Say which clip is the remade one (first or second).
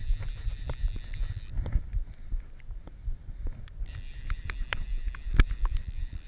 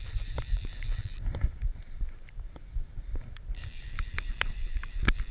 second